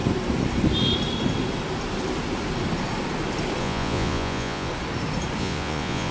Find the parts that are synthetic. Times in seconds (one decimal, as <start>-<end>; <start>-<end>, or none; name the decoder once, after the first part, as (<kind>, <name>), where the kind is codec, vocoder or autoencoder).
3.6-4.7 (vocoder, Vocos); 5.4-6.1